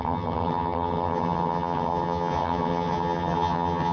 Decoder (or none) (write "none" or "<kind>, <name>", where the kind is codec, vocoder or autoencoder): vocoder, HiFi-GAN